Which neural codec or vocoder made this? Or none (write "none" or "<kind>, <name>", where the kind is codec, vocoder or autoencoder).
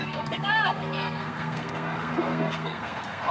codec, SNAC